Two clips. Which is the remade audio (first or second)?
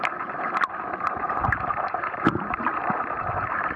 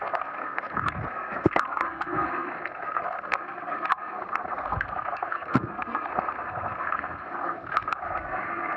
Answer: second